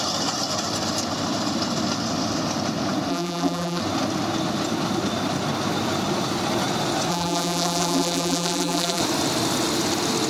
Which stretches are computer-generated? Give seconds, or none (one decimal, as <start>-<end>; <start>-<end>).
3.1-3.8; 7.1-9.0